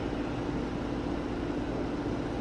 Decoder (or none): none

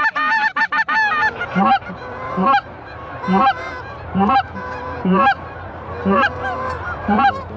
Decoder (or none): vocoder, BigVGAN v2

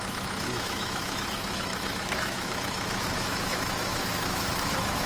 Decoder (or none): autoencoder, DAC-VAE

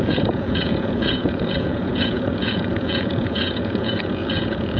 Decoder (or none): vocoder, Vocos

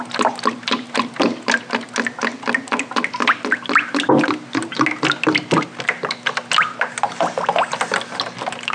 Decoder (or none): none